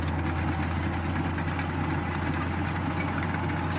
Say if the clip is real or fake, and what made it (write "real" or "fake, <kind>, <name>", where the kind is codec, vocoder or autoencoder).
real